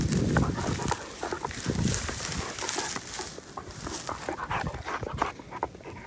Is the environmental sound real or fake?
real